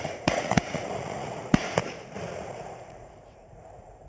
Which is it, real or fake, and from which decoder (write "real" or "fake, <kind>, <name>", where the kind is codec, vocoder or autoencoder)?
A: fake, vocoder, Vocos